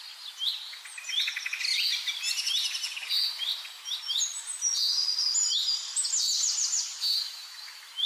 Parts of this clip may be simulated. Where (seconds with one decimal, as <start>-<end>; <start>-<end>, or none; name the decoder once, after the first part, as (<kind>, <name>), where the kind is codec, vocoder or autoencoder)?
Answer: none